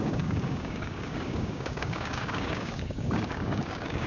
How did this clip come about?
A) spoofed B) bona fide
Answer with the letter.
A